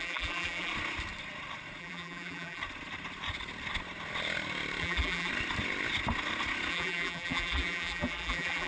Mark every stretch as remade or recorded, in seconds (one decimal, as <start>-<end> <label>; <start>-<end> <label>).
0.0-0.7 remade; 0.7-1.8 recorded; 1.8-2.6 remade; 2.6-4.8 recorded; 4.8-5.3 remade; 5.3-6.7 recorded; 6.7-8.7 remade